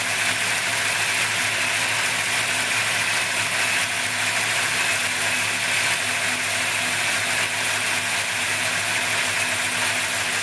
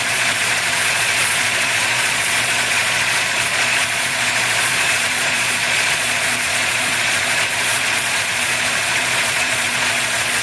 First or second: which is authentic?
first